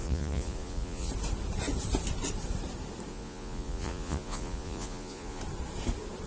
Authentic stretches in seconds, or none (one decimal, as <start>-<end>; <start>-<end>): 1.1-3.1; 5.4-6.3